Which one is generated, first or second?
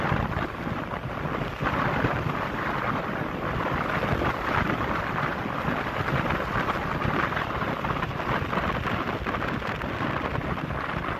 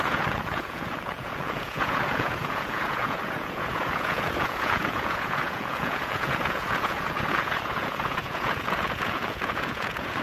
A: second